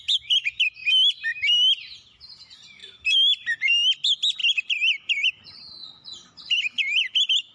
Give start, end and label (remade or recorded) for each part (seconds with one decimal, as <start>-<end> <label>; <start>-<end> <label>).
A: 0.0-2.8 recorded; 2.8-3.7 remade; 3.7-4.4 recorded; 4.4-5.3 remade; 5.3-5.8 recorded; 5.8-7.1 remade; 7.1-7.5 recorded